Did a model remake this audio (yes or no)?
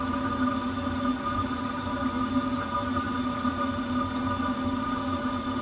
no